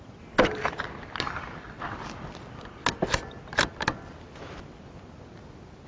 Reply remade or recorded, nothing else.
recorded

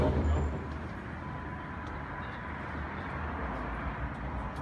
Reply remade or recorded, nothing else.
recorded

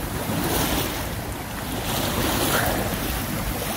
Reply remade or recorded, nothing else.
recorded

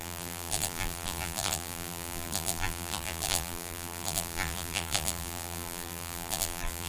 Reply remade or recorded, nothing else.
remade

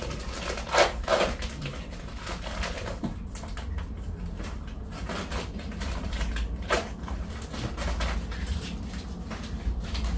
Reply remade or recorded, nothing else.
recorded